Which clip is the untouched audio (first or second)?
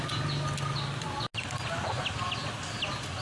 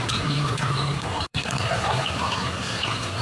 first